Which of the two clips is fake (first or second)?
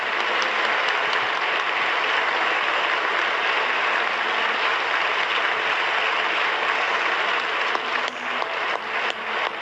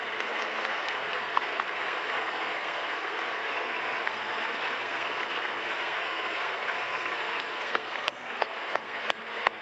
second